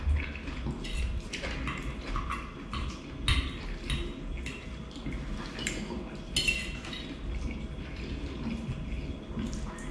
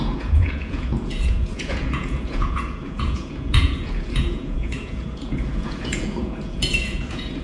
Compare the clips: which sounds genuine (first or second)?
first